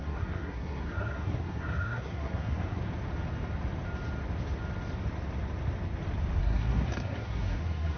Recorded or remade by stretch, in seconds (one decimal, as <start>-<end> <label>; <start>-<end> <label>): 0.0-2.8 remade; 2.8-6.4 recorded; 6.4-8.0 remade